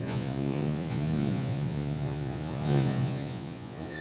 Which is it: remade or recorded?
remade